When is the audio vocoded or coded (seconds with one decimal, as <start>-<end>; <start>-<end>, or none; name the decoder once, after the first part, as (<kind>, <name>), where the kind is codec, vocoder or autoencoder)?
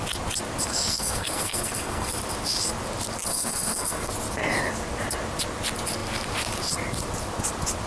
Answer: 0.7-2.1 (codec, SNAC); 3.3-4.1